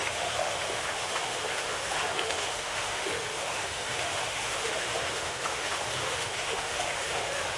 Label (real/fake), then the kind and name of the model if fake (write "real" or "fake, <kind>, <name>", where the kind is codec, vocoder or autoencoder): fake, autoencoder, DAC-VAE